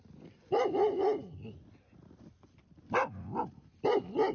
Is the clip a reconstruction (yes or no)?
no